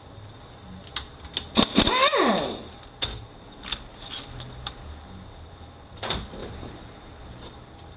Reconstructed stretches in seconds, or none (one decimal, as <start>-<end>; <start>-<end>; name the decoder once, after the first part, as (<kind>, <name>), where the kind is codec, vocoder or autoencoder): 6.4-8.0 (vocoder, BigVGAN v2)